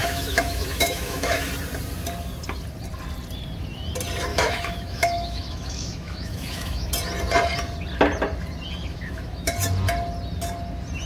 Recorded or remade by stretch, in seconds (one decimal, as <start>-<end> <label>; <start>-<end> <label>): 0.0-1.5 remade; 1.5-4.3 recorded; 4.3-6.9 remade; 6.9-8.9 recorded; 8.9-9.5 remade; 9.5-11.1 recorded